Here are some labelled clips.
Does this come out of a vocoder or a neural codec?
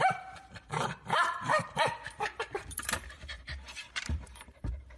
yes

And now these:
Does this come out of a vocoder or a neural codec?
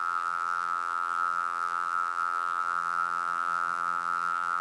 yes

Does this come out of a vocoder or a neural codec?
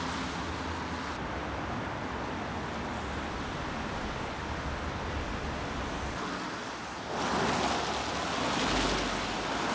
no